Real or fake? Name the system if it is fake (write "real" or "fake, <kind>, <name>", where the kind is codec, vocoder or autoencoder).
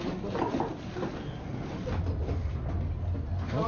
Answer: real